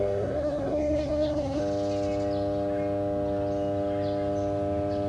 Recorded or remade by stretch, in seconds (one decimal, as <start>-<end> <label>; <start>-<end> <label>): 0.0-1.6 remade; 1.6-5.1 recorded